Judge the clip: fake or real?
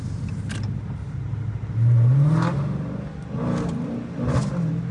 real